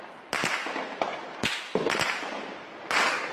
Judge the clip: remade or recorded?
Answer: recorded